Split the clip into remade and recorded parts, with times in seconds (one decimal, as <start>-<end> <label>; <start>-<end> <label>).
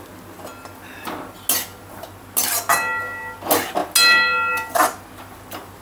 0.0-5.8 recorded